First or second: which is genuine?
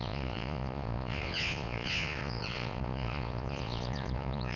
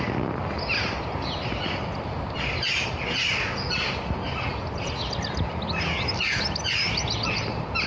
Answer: second